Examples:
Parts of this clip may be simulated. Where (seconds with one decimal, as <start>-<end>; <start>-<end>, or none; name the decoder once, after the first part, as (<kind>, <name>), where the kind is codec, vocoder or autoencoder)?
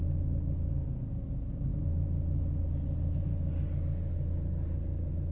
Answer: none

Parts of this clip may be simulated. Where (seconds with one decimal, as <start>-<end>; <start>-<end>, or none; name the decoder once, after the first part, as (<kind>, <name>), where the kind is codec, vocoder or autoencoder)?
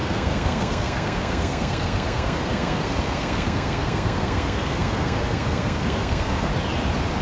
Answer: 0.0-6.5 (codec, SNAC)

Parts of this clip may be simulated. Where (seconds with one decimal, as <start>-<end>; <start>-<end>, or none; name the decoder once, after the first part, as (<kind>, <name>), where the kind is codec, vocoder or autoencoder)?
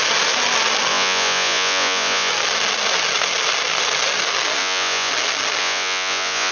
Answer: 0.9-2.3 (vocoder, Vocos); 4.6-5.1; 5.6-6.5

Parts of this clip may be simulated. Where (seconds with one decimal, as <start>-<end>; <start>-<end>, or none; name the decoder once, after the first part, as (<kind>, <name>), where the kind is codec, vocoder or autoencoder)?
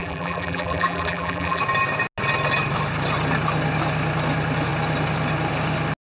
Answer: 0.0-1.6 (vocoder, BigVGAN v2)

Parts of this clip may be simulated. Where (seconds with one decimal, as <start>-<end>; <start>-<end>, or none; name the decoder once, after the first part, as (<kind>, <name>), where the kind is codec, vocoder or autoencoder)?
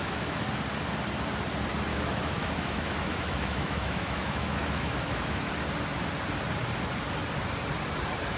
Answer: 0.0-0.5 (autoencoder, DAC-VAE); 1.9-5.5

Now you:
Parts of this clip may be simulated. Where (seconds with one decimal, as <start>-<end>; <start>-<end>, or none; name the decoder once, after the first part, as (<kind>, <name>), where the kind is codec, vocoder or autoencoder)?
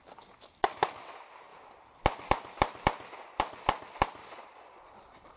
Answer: 4.2-5.4 (vocoder, Vocos)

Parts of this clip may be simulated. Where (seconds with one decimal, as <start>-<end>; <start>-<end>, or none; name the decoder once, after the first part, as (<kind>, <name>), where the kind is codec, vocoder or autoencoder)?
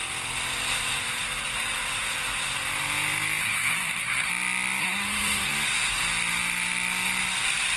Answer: 3.4-4.3 (codec, SNAC); 4.8-5.5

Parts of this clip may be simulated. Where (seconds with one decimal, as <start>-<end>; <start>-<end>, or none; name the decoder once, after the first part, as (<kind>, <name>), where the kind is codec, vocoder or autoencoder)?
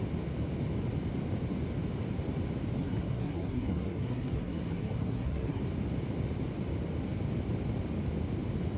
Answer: 2.8-5.6 (codec, SNAC)